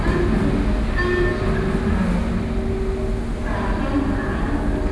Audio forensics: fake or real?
real